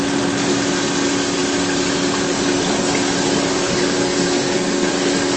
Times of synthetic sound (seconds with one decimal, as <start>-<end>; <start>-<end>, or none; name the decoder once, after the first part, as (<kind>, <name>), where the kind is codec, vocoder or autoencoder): 3.5-4.9 (codec, SNAC)